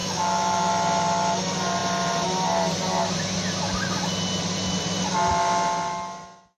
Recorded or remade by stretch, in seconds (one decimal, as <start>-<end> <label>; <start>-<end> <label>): 0.0-0.7 remade; 0.7-6.6 recorded